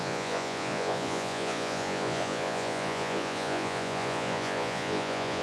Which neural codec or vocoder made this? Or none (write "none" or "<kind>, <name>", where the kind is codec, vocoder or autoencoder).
vocoder, Vocos